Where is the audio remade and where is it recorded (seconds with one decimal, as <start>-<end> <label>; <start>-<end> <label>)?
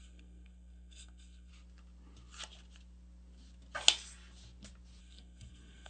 0.0-1.5 remade; 1.5-5.0 recorded; 5.0-5.9 remade